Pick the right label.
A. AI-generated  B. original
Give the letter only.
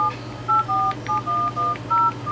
B